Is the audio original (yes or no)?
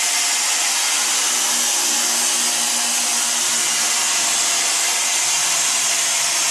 yes